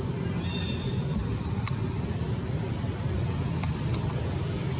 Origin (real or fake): real